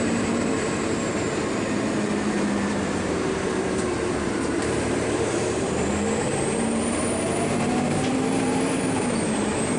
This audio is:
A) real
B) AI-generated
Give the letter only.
B